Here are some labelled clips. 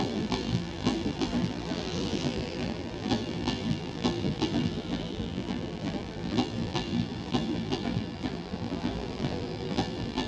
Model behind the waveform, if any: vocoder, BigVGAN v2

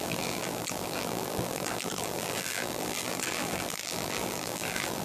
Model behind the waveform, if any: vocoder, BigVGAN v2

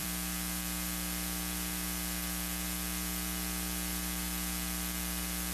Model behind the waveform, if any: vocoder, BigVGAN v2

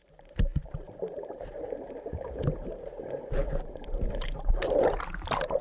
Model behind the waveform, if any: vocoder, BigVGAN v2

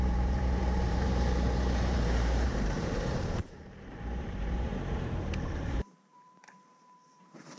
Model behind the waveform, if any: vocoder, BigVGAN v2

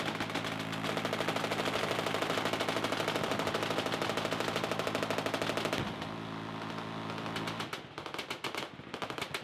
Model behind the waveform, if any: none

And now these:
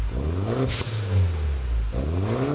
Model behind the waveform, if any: none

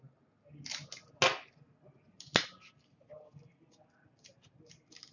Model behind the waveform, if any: none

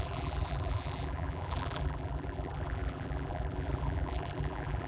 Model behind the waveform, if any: vocoder, BigVGAN v2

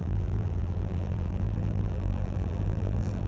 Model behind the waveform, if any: vocoder, BigVGAN v2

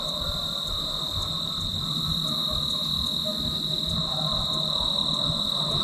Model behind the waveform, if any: none